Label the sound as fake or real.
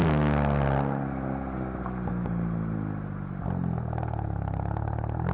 real